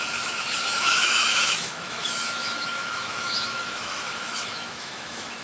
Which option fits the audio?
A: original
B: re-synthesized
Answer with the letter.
B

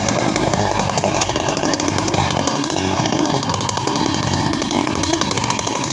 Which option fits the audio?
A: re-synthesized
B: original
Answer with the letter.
A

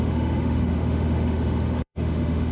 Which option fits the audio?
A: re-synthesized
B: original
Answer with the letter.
A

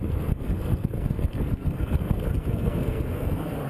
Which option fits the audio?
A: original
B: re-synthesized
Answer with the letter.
B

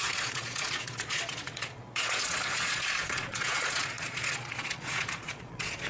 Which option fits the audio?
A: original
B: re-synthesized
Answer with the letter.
B